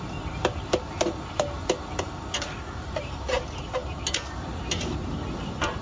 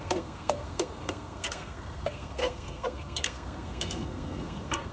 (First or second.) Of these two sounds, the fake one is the second